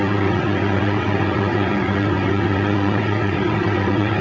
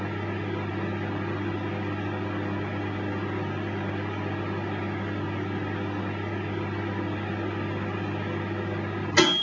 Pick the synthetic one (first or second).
first